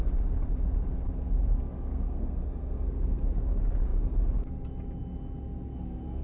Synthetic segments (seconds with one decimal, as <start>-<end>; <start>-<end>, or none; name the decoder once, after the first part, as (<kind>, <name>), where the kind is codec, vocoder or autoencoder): 1.9-3.2 (codec, SNAC)